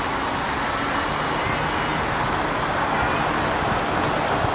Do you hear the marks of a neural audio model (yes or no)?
no